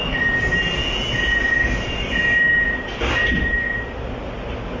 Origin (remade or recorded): recorded